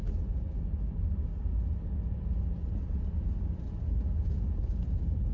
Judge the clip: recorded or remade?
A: recorded